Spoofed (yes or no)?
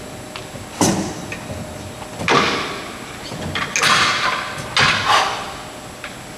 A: no